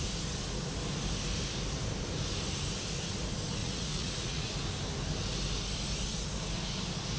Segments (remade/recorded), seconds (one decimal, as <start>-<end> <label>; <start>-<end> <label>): 0.0-3.6 recorded; 3.6-4.5 remade; 4.5-7.2 recorded